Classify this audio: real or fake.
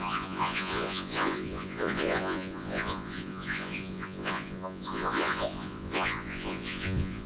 fake